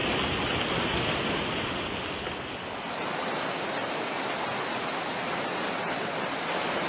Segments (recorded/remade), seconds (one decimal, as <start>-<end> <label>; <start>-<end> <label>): 0.0-6.9 recorded